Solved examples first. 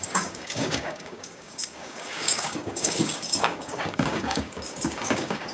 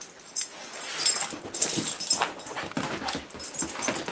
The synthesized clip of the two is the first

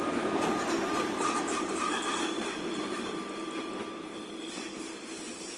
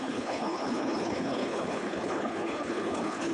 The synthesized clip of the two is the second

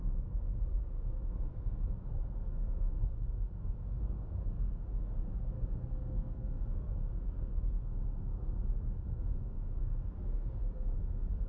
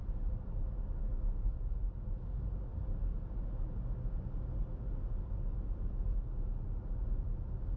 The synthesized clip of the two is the first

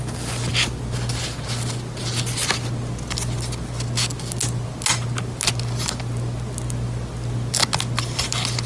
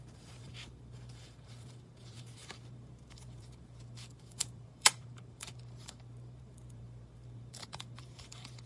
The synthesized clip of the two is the second